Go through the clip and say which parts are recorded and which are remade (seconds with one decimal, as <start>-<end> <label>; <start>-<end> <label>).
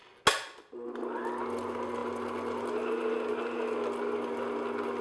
0.0-5.0 recorded